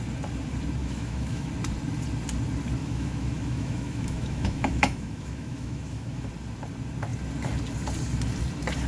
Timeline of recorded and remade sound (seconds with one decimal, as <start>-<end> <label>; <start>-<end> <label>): 0.0-0.8 recorded; 0.8-1.5 remade; 1.5-2.8 recorded; 2.8-6.3 remade; 6.3-8.9 recorded